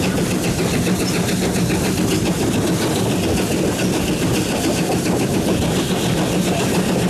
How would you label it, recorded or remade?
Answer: recorded